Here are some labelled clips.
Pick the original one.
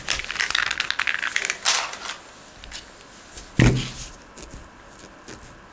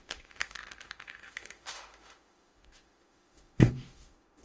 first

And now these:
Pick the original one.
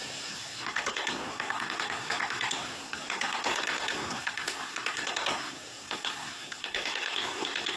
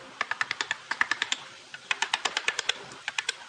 second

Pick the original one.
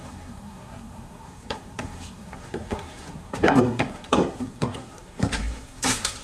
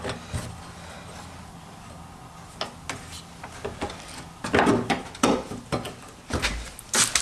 second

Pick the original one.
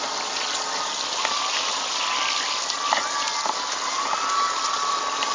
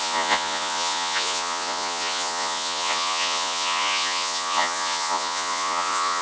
first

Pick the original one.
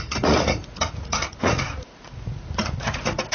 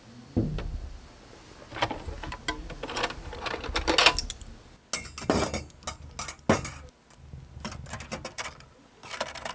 second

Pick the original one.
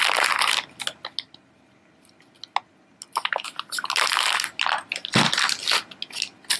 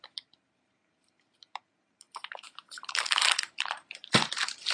first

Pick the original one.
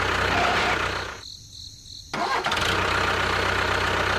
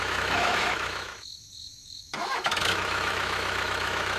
first